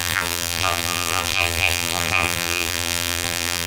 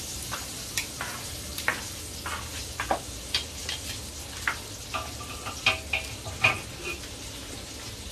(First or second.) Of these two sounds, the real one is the second